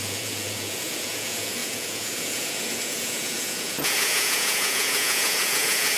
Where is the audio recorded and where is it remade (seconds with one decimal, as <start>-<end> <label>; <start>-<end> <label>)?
0.0-6.0 remade